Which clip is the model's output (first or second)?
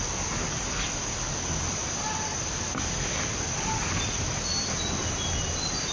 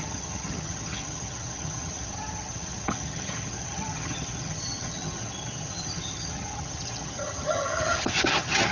second